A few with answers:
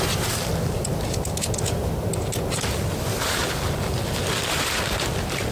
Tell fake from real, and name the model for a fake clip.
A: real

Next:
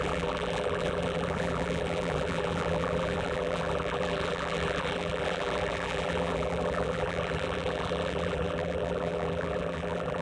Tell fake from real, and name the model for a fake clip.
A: fake, vocoder, BigVGAN v2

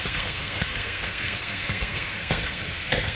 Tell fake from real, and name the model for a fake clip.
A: fake, codec, SNAC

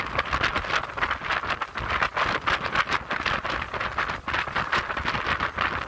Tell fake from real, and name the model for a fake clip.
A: real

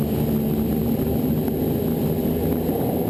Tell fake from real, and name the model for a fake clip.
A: real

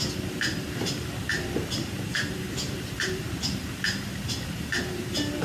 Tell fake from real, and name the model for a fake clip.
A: fake, vocoder, BigVGAN v2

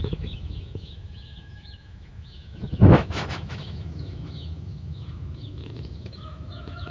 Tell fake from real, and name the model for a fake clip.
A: fake, autoencoder, DAC-VAE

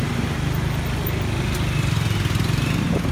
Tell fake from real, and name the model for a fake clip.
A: real